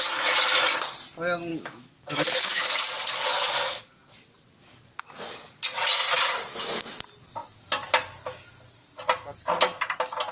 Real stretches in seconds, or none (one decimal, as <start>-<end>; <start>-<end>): 0.0-1.5; 2.7-10.3